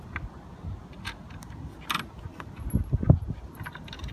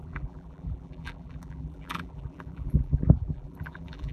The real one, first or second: first